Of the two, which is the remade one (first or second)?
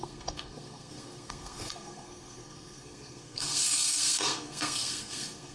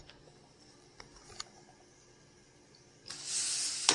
first